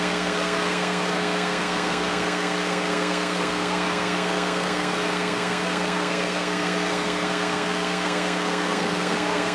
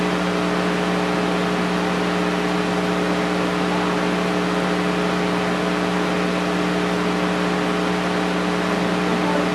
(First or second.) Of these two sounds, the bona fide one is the second